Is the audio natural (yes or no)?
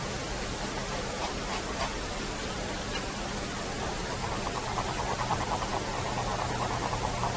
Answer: yes